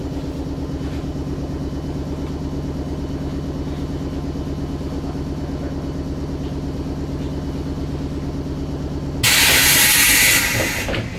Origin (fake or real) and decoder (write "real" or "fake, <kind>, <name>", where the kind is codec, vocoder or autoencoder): real